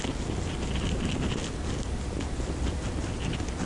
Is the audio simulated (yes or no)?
no